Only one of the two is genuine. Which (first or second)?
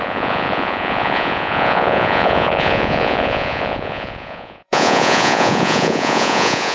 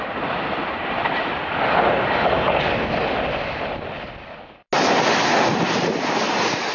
second